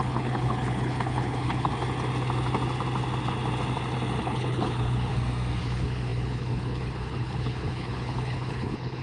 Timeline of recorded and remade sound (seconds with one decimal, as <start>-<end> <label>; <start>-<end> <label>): 0.0-1.7 remade; 1.7-4.2 recorded; 4.2-5.1 remade; 5.1-5.6 recorded; 5.6-9.0 remade